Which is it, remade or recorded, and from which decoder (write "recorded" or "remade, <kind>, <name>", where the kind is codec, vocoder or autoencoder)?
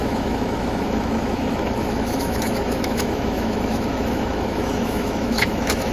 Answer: remade, autoencoder, DAC-VAE